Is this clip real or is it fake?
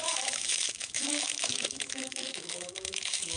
fake